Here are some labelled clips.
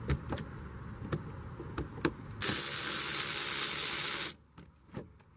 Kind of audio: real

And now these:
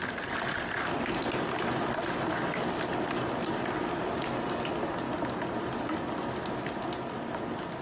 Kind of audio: real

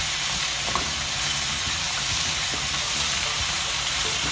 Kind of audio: fake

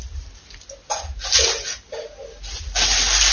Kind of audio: real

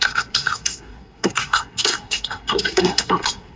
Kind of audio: fake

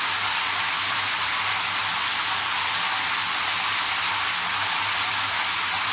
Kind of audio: real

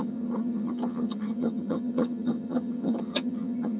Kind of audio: fake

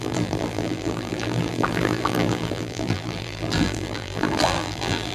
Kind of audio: fake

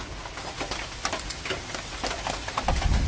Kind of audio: real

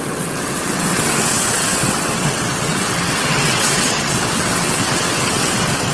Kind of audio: fake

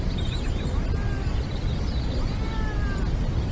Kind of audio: real